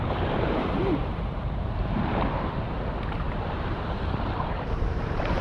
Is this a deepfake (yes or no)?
yes